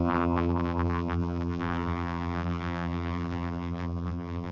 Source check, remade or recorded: remade